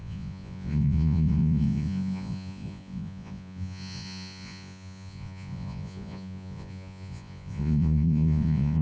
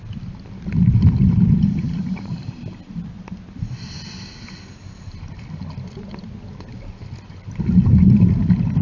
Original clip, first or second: second